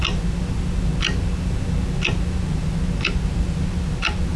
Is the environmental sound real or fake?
real